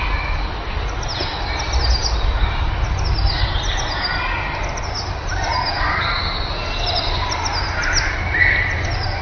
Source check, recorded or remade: recorded